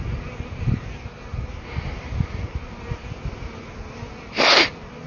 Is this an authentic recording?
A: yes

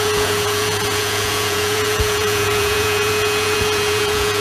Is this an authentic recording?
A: no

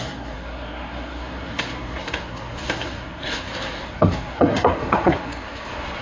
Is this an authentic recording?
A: no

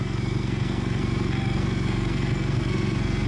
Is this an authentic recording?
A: no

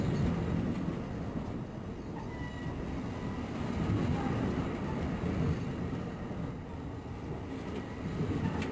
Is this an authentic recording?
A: yes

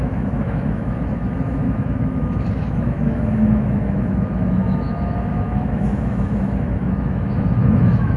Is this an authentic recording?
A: no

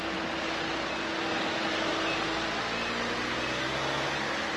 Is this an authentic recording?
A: yes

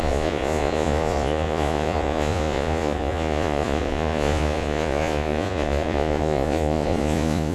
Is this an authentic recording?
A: no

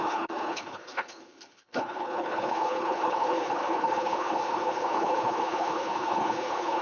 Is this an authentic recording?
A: no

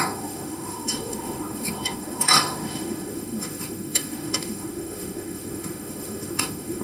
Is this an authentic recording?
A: no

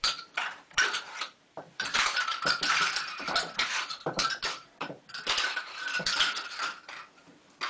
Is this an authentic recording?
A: no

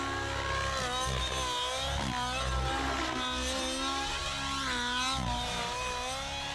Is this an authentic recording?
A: yes